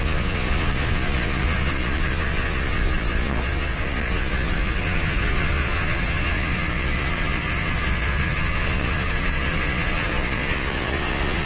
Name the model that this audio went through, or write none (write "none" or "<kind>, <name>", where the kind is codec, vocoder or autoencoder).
vocoder, Vocos